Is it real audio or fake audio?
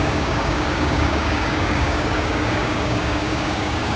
fake